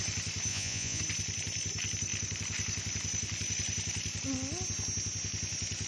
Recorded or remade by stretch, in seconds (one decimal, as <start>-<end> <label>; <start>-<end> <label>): 0.0-0.5 recorded; 0.5-1.0 remade; 1.0-5.9 recorded